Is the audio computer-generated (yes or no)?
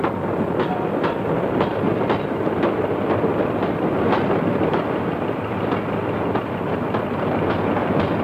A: no